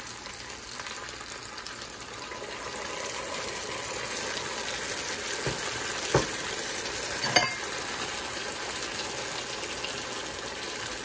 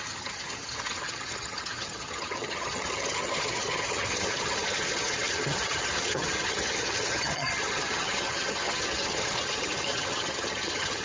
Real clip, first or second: first